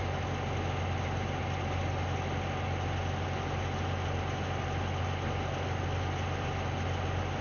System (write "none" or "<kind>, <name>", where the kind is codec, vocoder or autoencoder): none